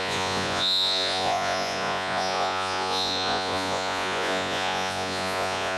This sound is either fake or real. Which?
fake